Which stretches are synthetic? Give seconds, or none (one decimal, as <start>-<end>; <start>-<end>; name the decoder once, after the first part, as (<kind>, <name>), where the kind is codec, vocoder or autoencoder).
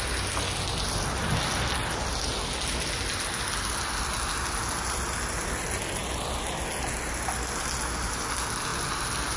none